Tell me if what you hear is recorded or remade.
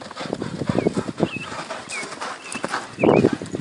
recorded